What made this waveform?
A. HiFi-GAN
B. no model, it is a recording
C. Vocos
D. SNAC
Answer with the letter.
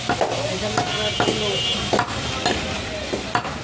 B